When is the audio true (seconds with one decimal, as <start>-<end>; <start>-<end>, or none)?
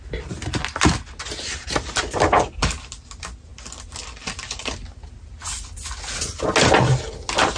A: 0.0-7.6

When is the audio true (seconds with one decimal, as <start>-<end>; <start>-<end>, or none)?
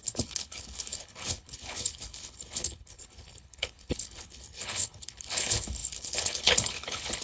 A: none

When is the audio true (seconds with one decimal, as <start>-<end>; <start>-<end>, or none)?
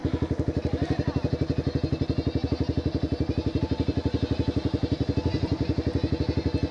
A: 0.0-6.7